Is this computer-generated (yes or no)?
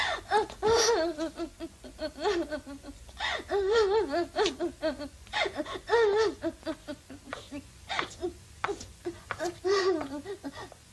yes